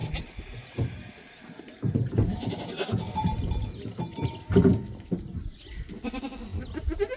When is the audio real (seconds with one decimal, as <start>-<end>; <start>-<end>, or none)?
0.0-7.2